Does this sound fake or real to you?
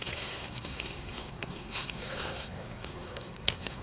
fake